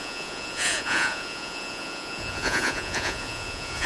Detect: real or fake fake